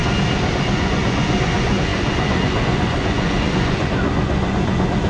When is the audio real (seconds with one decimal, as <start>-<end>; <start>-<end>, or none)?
0.0-0.7